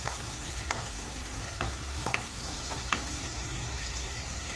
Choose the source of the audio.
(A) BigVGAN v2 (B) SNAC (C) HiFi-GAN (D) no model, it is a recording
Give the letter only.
B